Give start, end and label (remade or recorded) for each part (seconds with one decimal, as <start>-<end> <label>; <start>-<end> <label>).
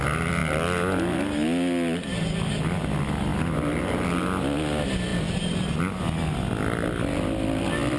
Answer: 0.0-8.0 recorded